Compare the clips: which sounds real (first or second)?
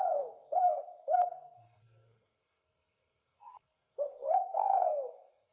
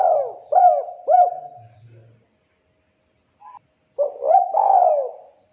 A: second